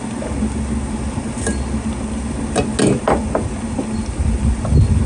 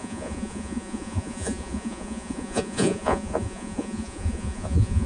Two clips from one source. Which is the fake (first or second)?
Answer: second